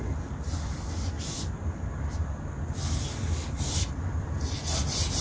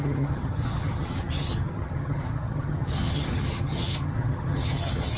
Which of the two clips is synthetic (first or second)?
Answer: second